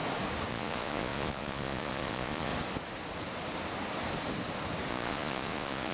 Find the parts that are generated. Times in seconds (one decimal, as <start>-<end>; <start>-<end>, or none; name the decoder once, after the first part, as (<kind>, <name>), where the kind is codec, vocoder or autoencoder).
0.5-2.5 (vocoder, Vocos); 4.9-5.9